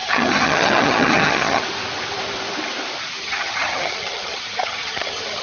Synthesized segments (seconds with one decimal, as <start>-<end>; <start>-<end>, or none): 0.0-1.6; 3.2-5.4